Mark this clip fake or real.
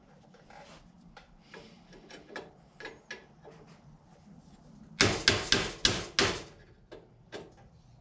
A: real